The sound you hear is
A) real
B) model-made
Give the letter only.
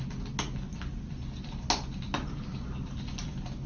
A